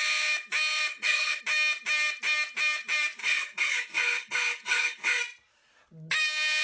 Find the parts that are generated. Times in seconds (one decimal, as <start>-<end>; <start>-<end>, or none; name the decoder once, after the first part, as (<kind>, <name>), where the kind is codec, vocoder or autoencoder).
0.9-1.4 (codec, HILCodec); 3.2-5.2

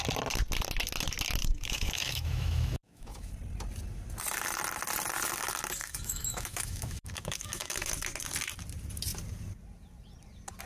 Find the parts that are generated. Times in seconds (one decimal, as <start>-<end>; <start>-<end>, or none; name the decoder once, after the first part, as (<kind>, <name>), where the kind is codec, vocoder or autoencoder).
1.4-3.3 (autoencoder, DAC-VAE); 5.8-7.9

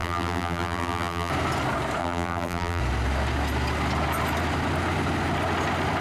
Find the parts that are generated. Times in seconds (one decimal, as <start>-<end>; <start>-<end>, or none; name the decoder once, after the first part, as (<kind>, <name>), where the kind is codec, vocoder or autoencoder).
0.0-1.3 (vocoder, BigVGAN v2); 2.0-2.8

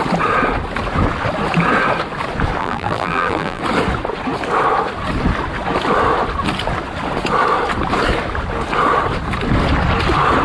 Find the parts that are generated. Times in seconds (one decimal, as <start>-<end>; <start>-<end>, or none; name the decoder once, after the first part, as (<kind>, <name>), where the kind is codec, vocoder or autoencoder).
2.6-3.6 (vocoder, BigVGAN v2)

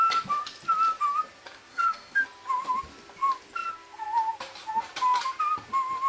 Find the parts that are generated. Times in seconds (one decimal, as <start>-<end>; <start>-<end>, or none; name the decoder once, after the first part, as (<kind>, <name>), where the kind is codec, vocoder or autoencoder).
1.7-2.2 (codec, SNAC)

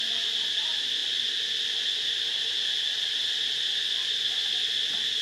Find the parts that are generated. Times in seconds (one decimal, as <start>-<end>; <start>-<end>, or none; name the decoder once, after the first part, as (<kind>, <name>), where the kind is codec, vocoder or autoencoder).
none

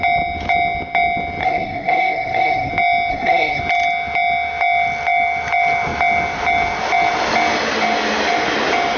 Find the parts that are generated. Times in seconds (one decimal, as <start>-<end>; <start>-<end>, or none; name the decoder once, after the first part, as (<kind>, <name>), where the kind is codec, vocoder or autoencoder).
1.4-2.7 (codec, SNAC); 3.1-3.6